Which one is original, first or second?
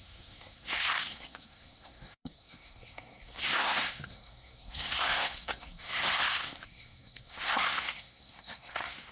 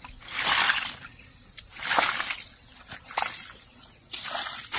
second